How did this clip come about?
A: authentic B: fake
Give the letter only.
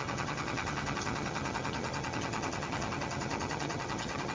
B